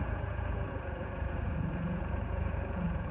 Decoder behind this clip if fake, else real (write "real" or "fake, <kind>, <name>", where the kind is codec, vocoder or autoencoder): fake, vocoder, Vocos